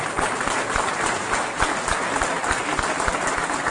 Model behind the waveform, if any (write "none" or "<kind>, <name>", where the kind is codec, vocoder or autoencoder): none